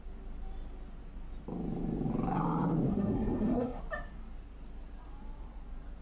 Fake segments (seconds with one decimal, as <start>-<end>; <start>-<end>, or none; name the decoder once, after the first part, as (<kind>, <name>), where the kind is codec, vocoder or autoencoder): 2.9-3.8 (codec, SNAC)